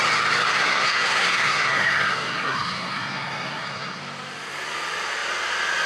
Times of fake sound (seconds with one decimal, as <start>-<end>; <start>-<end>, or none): 0.5-4.0